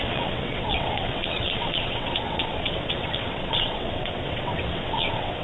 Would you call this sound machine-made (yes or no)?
yes